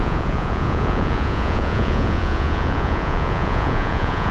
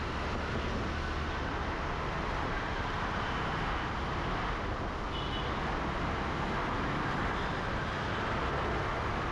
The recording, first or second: second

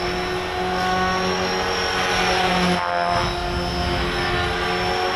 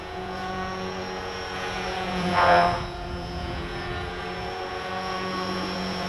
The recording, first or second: first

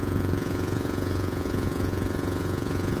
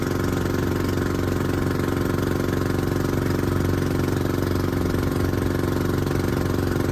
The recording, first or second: second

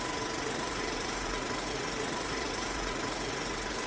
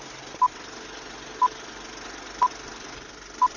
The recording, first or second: second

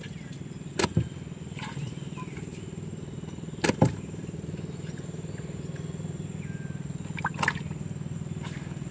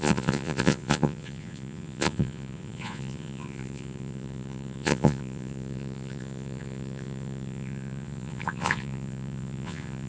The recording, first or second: first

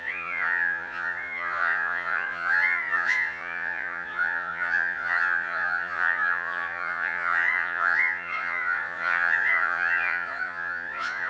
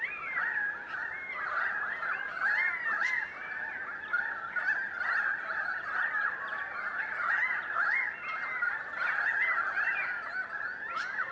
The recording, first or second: second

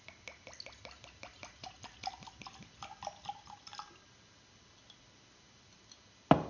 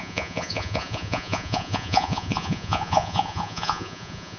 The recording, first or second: first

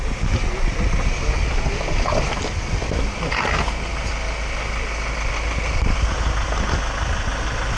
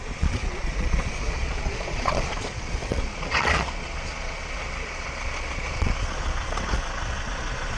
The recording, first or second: first